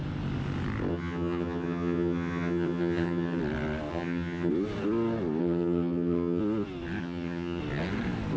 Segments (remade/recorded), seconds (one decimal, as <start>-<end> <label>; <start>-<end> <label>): 0.0-0.9 recorded; 0.9-3.4 remade; 3.4-3.9 recorded; 3.9-4.5 remade; 4.5-5.4 recorded; 5.4-6.4 remade; 6.4-7.0 recorded; 7.0-7.6 remade; 7.6-8.4 recorded